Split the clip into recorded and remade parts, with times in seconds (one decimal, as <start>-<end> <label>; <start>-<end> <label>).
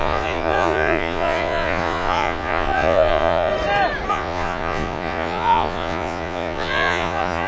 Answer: 0.0-3.5 remade; 3.5-4.1 recorded; 4.1-7.5 remade